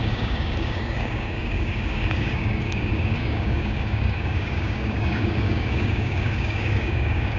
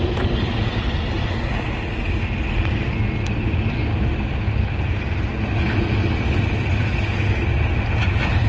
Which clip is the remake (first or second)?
first